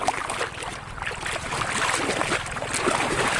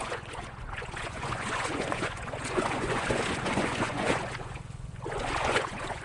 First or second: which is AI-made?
second